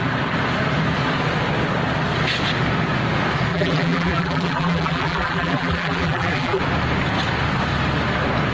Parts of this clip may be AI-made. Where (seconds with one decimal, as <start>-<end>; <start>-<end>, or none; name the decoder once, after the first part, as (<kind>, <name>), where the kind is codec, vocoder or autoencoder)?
3.5-6.6 (vocoder, BigVGAN v2)

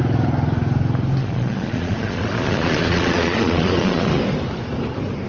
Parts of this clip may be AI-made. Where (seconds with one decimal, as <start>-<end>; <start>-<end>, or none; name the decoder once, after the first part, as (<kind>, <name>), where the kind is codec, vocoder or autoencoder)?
1.2-4.2 (vocoder, Vocos)

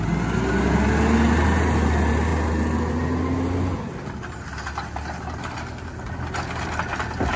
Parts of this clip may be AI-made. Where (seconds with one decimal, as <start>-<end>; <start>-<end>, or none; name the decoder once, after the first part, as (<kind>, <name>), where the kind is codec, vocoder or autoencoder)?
none

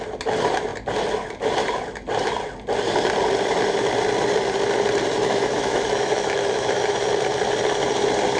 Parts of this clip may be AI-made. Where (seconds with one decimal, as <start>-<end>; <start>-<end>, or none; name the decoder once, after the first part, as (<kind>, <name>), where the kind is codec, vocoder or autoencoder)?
5.2-7.0 (autoencoder, DAC-VAE)

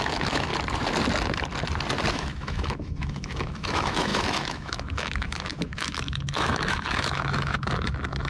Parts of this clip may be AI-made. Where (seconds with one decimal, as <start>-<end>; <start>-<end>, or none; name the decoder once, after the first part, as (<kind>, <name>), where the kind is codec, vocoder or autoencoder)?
0.0-0.5 (autoencoder, DAC-VAE); 2.1-8.3

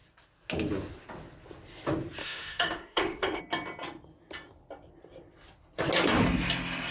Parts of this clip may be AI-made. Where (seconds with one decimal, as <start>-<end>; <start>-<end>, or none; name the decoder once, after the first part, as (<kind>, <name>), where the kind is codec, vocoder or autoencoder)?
2.2-3.4 (autoencoder, DAC-VAE)